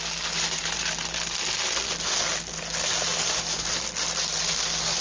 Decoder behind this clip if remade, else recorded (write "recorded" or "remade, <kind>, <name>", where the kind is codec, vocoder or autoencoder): recorded